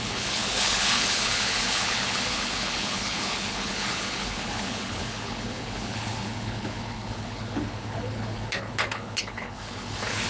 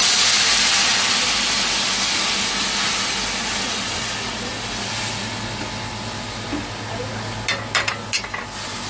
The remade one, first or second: first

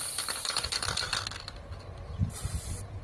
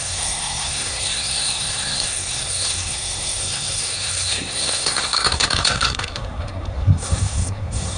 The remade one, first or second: second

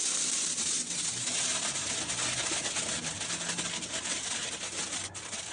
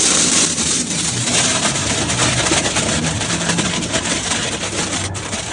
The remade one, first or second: second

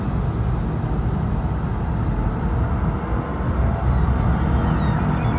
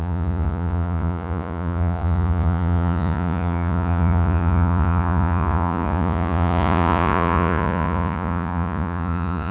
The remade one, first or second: second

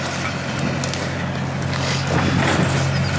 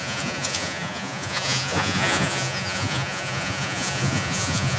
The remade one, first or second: second